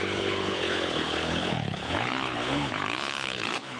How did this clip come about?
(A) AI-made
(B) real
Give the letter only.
A